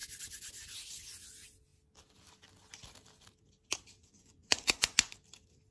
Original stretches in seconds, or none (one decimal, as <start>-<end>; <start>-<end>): 0.0-4.0; 5.1-5.7